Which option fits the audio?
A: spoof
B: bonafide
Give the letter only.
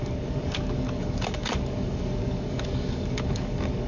A